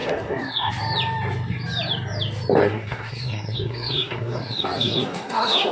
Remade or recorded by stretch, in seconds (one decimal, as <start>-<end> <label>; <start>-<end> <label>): 0.0-0.7 remade; 0.7-2.6 recorded; 2.6-5.7 remade